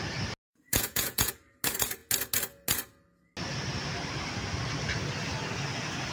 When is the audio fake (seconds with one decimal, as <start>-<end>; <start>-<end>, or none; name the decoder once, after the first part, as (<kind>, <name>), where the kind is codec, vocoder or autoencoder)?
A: 0.5-1.3 (vocoder, Vocos)